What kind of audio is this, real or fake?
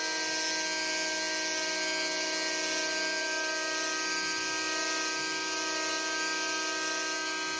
real